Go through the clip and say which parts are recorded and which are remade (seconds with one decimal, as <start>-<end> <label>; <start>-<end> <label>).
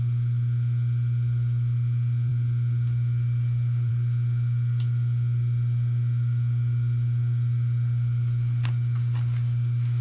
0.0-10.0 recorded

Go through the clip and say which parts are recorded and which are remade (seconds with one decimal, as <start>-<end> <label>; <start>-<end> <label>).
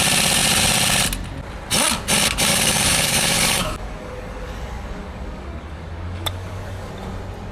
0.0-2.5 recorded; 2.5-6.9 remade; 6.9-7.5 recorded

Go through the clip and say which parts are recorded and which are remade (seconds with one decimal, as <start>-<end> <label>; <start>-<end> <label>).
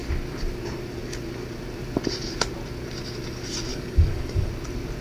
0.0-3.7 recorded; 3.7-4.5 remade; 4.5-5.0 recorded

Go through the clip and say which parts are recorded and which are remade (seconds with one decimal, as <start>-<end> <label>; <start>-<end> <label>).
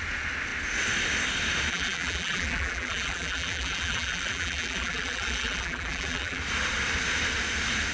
0.0-1.7 recorded; 1.7-6.4 remade; 6.4-7.9 recorded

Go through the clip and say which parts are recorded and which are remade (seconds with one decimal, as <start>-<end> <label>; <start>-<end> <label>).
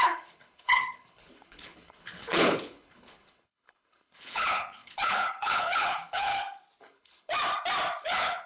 0.0-6.3 remade; 6.3-6.8 recorded; 6.8-7.3 remade; 7.3-8.0 recorded; 8.0-8.5 remade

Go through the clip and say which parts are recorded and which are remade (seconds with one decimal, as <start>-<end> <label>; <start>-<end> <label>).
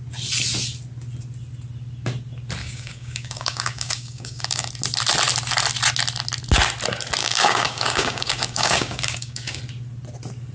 0.0-2.6 recorded; 2.6-4.7 remade; 4.7-7.2 recorded; 7.2-9.6 remade; 9.6-10.5 recorded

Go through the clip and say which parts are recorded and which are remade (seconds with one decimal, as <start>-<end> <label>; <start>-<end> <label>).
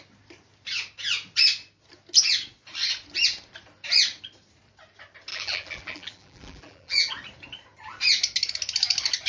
0.0-5.3 recorded; 5.3-7.1 remade; 7.1-9.3 recorded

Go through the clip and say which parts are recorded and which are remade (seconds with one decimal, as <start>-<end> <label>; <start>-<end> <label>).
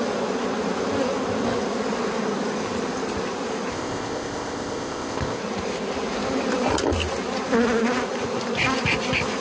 0.0-3.7 recorded; 3.7-5.4 remade; 5.4-9.4 recorded